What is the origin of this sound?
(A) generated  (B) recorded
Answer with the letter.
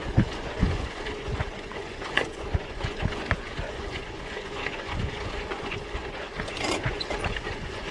A